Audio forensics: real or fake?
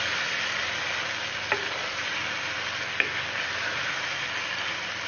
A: real